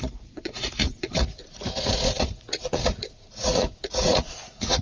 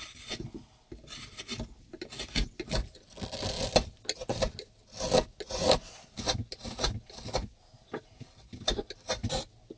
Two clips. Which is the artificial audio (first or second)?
first